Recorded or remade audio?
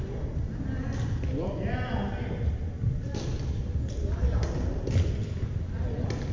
recorded